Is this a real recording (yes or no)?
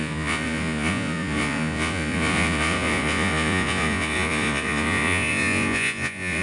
no